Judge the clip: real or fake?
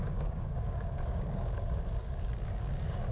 fake